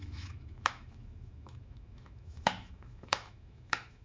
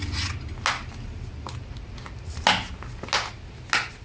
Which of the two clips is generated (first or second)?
first